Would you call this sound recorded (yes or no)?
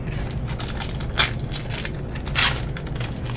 yes